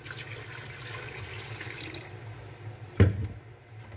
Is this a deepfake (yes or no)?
no